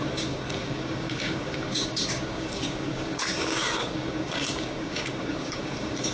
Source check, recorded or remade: remade